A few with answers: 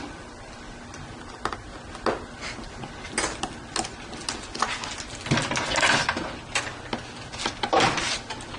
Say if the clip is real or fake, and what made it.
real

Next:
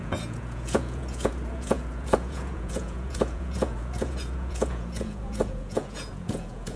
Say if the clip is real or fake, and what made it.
fake, vocoder, Vocos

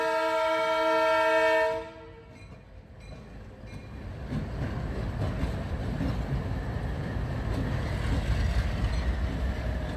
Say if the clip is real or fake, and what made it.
real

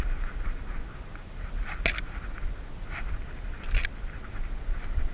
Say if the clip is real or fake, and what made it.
real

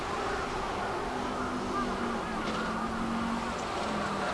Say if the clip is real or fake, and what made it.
real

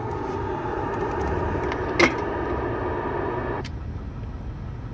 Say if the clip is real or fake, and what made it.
real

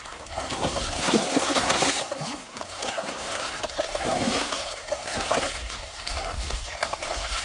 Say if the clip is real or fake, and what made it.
fake, codec, SNAC